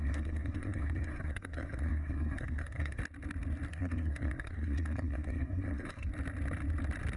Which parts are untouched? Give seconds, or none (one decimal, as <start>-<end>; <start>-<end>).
3.0-3.7; 6.1-7.2